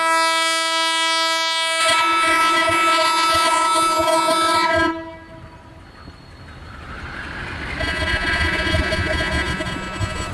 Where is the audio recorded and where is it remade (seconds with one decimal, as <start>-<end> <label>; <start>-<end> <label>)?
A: 0.0-1.8 recorded; 1.8-4.9 remade; 4.9-7.8 recorded; 7.8-10.3 remade